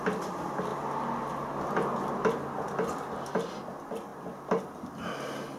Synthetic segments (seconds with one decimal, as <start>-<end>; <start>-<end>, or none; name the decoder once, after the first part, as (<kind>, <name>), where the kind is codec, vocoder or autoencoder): none